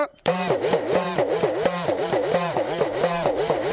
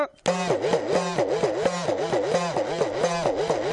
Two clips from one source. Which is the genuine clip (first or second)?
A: second